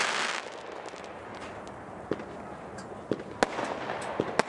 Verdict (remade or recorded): recorded